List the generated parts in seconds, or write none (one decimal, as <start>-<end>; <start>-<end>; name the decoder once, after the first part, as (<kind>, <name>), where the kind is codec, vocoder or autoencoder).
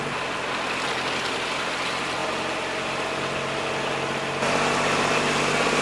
none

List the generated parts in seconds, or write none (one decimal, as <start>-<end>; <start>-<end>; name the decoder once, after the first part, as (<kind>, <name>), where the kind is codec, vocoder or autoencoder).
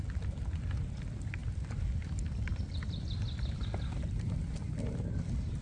1.4-4.8 (vocoder, BigVGAN v2)